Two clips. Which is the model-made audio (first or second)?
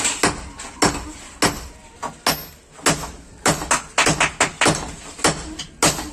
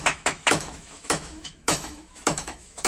second